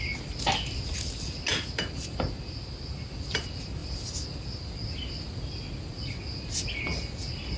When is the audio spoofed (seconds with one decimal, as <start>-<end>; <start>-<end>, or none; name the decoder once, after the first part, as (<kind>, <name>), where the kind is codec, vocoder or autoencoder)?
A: none

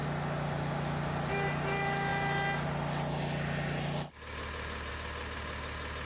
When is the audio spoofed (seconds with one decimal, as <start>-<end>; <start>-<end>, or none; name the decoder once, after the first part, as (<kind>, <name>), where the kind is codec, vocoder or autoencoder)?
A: none

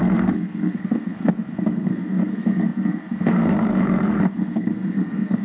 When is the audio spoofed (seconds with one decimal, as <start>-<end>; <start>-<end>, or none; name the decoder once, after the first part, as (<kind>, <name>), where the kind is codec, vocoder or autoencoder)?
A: 0.0-5.4 (codec, SNAC)

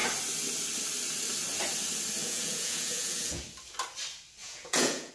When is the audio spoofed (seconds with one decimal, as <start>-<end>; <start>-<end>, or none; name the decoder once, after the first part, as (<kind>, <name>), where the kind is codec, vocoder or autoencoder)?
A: 2.2-3.4 (vocoder, Vocos); 4.4-5.1